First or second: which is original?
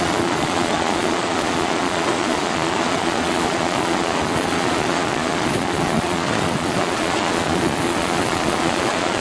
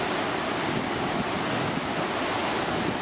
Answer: second